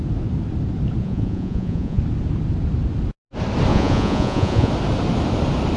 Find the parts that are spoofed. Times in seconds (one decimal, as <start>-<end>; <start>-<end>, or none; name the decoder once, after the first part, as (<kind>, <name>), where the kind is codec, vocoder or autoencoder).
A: 1.0-2.0 (vocoder, Vocos); 3.7-4.7